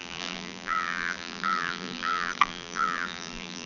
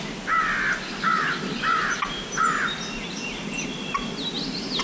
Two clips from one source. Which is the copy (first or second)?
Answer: first